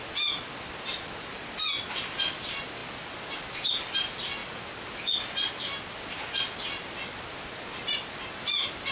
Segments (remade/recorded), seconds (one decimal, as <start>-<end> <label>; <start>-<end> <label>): 0.0-8.9 recorded